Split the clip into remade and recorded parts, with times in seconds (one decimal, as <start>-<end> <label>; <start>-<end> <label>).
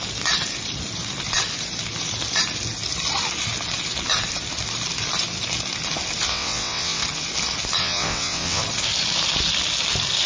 0.0-6.3 recorded; 6.3-7.0 remade; 7.0-7.8 recorded; 7.8-8.6 remade; 8.6-10.3 recorded